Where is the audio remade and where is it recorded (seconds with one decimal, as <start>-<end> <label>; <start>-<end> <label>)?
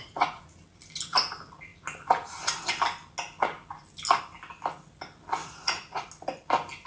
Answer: 0.0-0.6 remade; 0.6-5.4 recorded; 5.4-6.1 remade; 6.1-6.9 recorded